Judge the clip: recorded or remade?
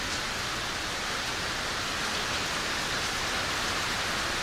recorded